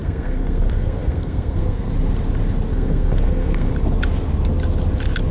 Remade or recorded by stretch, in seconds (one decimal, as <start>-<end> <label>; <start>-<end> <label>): 0.0-1.9 remade; 1.9-2.7 recorded; 2.7-3.7 remade; 3.7-5.3 recorded